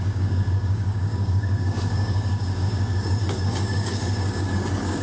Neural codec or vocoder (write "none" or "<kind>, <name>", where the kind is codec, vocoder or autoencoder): codec, DAC